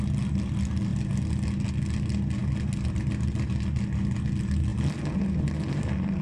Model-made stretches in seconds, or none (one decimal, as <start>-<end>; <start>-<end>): none